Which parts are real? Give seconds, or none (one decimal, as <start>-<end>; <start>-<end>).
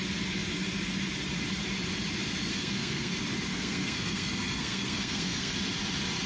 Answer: 0.0-2.5; 3.1-3.5; 5.6-6.3